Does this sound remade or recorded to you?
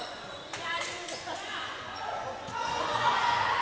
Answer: remade